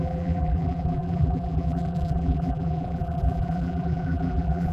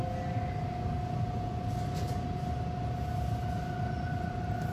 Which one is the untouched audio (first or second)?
second